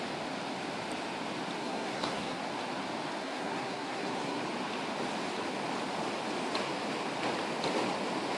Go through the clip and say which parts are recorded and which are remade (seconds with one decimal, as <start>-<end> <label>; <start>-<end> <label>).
0.0-1.6 recorded; 1.6-2.4 remade; 2.4-3.2 recorded; 3.2-4.4 remade; 4.4-8.4 recorded